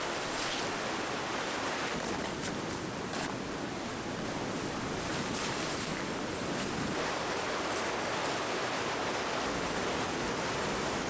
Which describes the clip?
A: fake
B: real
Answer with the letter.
B